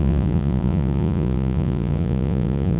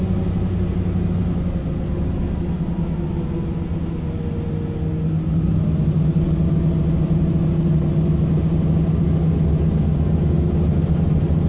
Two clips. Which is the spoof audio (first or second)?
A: first